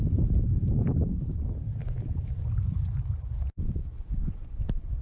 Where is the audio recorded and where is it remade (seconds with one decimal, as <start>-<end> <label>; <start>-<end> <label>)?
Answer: 0.0-5.0 recorded